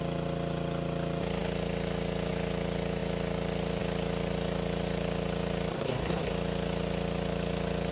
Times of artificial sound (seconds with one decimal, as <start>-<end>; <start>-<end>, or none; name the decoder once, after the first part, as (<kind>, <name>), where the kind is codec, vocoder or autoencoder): 5.7-6.3 (codec, SNAC)

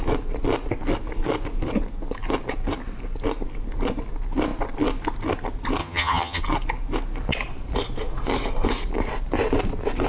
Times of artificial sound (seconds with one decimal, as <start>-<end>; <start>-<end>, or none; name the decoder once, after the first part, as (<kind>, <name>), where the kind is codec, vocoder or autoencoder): 5.8-6.4 (vocoder, HiFi-GAN)

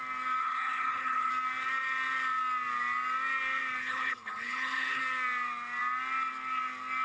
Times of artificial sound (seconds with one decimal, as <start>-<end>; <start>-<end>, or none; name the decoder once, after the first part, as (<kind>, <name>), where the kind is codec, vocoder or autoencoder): 0.4-1.3 (codec, HILCodec); 3.8-5.0